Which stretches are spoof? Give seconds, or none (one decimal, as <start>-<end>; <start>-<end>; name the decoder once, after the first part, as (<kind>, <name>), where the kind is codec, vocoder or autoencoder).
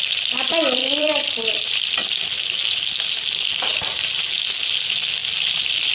0.8-1.7 (vocoder, BigVGAN v2); 3.7-4.2